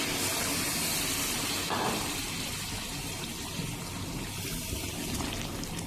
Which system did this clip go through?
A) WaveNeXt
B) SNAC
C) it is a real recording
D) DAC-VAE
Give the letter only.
C